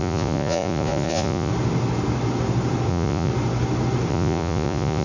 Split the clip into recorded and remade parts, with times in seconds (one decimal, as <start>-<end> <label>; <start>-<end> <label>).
0.0-1.5 remade; 1.5-2.9 recorded; 2.9-3.3 remade; 3.3-4.1 recorded; 4.1-5.0 remade